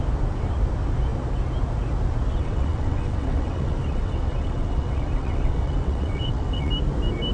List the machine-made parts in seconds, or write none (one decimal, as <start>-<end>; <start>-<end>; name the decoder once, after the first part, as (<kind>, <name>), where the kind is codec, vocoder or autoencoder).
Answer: 2.3-6.7 (vocoder, WaveNeXt)